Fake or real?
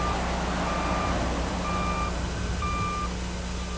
real